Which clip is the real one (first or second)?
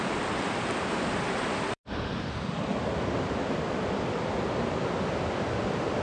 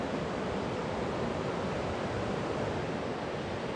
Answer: second